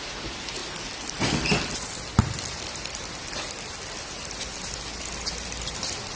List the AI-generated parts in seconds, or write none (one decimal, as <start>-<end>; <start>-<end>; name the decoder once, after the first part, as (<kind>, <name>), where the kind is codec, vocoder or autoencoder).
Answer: none